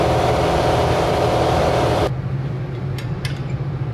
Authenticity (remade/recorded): remade